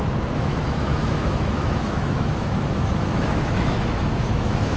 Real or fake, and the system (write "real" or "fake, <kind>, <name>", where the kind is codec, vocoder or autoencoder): fake, autoencoder, DAC-VAE